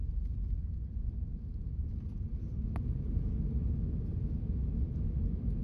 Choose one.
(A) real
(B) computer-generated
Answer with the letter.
A